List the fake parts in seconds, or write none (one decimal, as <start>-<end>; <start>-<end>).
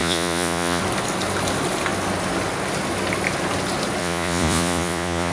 0.0-0.8; 4.0-5.3